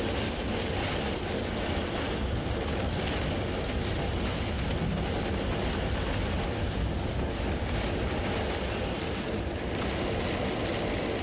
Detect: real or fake real